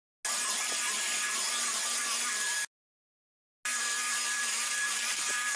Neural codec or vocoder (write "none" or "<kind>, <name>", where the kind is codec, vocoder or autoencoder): none